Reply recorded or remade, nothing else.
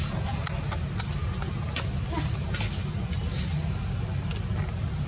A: recorded